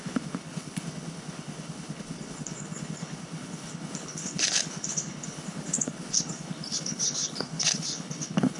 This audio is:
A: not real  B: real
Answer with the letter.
A